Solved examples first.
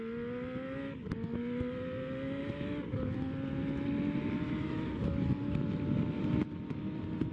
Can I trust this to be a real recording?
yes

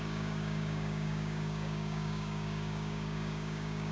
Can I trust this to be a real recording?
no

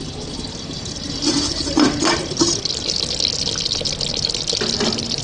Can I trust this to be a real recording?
yes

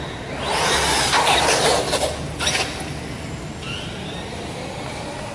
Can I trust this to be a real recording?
yes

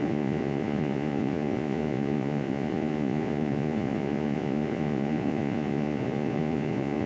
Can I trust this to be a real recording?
no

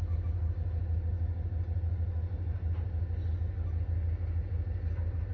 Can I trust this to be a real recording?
yes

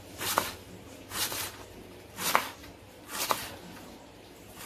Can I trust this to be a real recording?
no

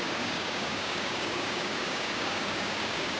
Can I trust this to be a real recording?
no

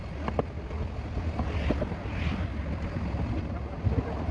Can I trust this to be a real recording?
yes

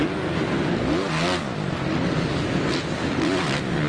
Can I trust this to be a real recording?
yes